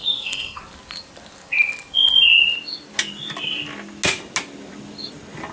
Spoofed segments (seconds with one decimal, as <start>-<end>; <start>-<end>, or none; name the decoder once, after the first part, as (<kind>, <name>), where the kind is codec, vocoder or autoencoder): 0.0-0.6 (codec, SNAC)